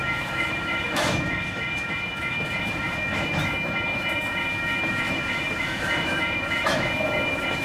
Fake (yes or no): yes